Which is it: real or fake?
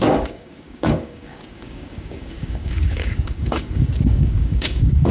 fake